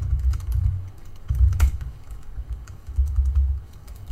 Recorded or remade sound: remade